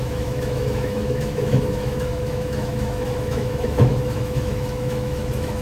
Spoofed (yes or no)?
yes